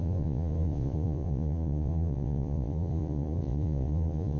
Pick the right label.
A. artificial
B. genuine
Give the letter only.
A